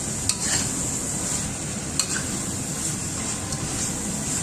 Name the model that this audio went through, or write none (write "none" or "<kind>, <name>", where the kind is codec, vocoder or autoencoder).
none